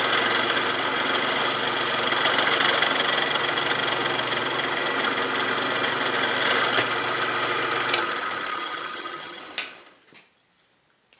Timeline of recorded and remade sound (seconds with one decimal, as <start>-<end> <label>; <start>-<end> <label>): 0.0-8.5 recorded; 8.5-9.4 remade; 9.4-11.2 recorded